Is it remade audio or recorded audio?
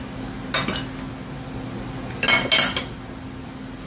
recorded